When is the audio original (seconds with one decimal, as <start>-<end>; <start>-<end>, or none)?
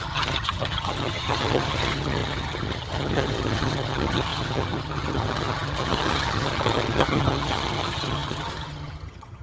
none